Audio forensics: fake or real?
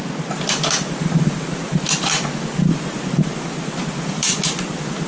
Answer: real